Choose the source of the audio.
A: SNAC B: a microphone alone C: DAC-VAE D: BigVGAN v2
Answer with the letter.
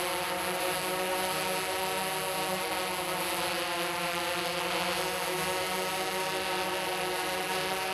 B